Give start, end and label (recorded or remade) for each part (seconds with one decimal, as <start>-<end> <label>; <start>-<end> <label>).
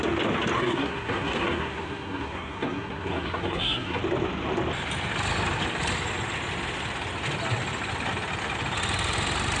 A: 0.0-0.6 recorded; 0.6-4.0 remade; 4.0-9.6 recorded